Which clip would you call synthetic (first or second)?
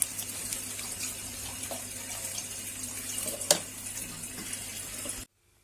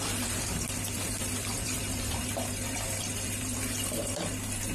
second